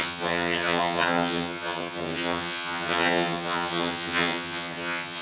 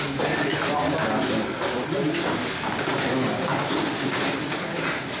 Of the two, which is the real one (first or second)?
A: second